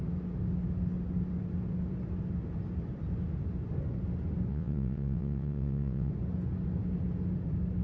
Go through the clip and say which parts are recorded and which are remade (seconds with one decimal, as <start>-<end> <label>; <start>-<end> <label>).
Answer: 0.0-4.5 recorded; 4.5-6.1 remade; 6.1-7.8 recorded